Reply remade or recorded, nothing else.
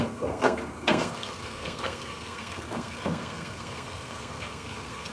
remade